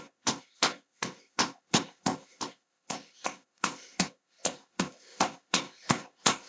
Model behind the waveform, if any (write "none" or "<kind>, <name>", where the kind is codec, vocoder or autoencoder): codec, ZipCodec